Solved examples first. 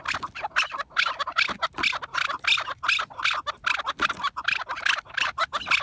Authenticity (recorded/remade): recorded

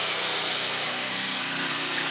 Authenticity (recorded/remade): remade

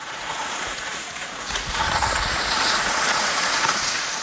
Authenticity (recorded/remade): remade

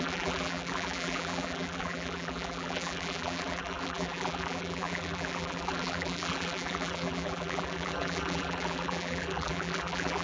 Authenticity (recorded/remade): remade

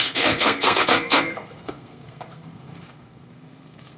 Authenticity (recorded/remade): remade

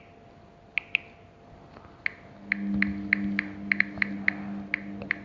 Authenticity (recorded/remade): recorded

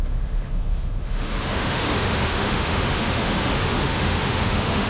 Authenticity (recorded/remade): remade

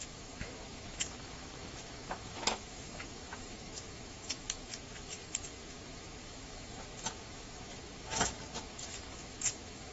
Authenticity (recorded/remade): remade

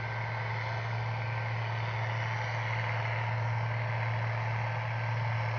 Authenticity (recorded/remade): recorded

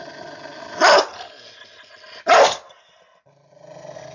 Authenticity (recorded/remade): recorded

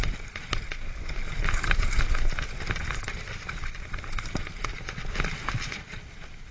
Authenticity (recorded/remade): recorded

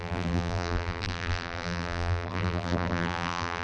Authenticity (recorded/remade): remade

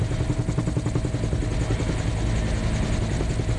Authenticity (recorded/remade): recorded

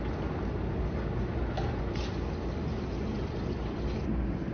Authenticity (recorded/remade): recorded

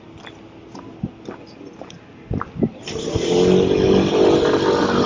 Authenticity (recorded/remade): recorded